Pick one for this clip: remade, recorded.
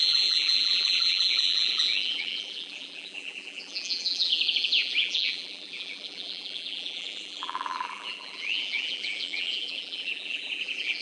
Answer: remade